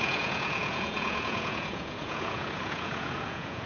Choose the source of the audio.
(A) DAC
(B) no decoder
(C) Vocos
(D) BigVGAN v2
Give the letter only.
C